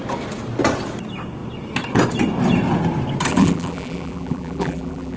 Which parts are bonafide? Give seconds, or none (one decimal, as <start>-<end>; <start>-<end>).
0.0-3.3